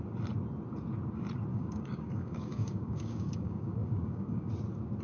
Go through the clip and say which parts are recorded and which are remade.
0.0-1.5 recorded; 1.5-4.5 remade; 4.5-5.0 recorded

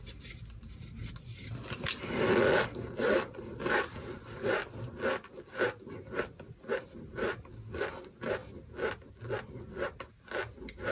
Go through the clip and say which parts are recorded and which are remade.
0.0-10.9 recorded